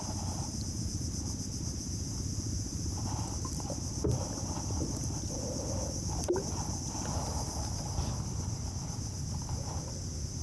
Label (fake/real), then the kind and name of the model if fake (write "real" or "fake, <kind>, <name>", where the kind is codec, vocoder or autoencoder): real